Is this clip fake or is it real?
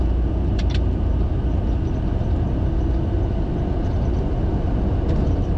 real